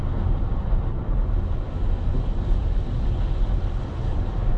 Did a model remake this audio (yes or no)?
no